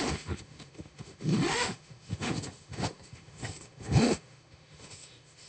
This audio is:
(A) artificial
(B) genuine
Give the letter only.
A